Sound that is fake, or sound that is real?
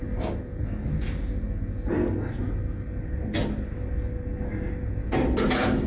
real